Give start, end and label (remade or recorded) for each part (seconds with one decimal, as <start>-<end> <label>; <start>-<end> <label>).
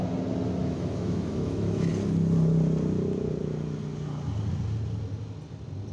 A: 0.0-0.6 recorded; 0.6-1.9 remade; 1.9-5.9 recorded